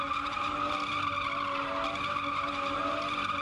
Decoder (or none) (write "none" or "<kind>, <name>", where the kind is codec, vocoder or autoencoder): none